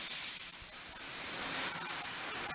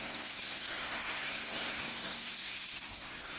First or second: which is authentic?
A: first